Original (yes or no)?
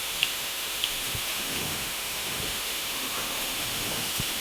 no